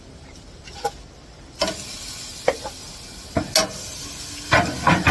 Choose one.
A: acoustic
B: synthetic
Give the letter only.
A